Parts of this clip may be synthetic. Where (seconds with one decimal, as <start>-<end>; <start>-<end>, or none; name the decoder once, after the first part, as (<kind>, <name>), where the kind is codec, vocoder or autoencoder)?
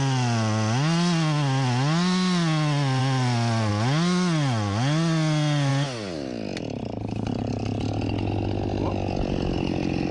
none